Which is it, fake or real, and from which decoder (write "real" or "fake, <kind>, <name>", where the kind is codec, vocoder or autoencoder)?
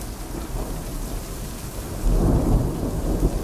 real